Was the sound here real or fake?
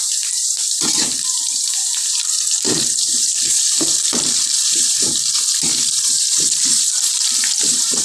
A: fake